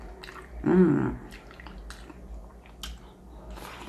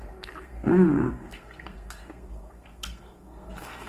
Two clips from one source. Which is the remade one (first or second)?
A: second